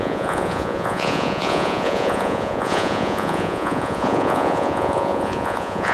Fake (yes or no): yes